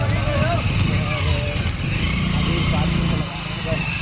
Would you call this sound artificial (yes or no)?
no